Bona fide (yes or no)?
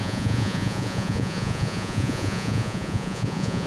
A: no